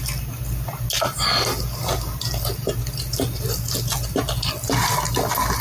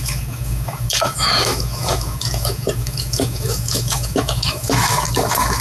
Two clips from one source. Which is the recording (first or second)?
first